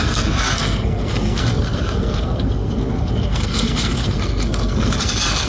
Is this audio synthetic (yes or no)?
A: yes